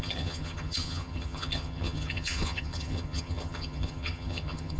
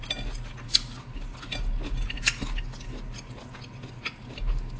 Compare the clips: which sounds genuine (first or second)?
second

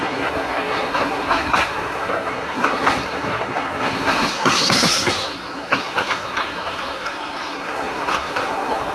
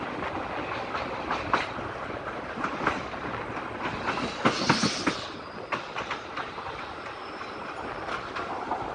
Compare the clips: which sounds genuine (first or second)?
second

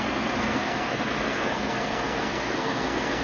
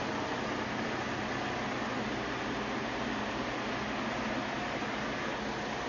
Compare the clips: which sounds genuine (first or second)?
second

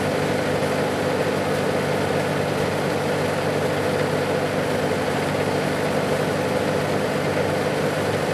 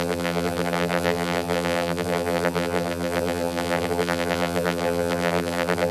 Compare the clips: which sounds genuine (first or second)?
first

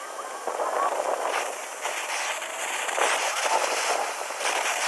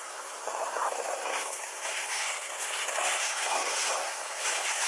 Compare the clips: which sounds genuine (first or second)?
first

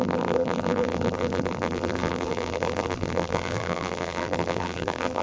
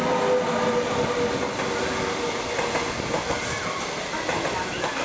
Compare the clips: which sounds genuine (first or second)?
second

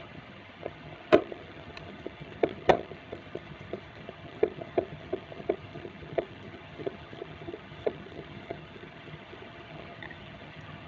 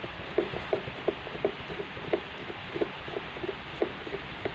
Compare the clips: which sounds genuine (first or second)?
second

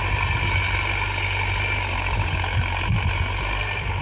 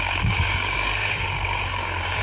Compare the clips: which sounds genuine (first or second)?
first